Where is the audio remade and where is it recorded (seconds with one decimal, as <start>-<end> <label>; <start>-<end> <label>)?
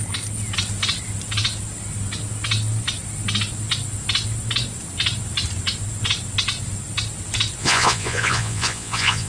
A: 0.0-7.6 recorded; 7.6-9.3 remade